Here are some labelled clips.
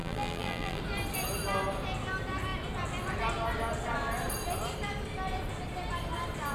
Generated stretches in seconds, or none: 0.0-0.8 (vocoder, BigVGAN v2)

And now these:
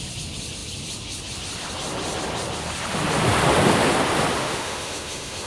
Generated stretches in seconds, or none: 4.4-5.5 (autoencoder, DAC-VAE)

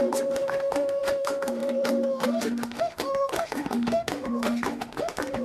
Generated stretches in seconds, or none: 0.0-5.4 (autoencoder, DAC-VAE)

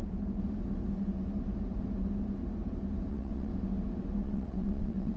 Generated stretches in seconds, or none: 3.1-3.5 (vocoder, WaveNeXt); 4.2-5.2

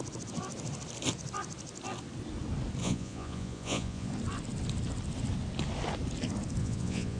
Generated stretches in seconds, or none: 2.8-4.1 (vocoder, Vocos); 6.6-7.2

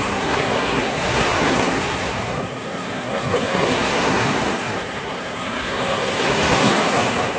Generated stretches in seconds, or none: 0.0-7.4 (codec, SNAC)